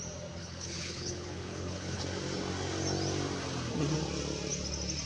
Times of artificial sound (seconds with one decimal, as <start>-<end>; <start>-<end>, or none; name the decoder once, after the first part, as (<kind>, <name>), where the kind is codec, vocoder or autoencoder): 0.4-2.0 (codec, HILCodec)